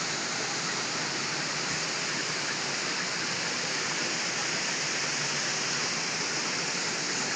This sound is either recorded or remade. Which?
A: recorded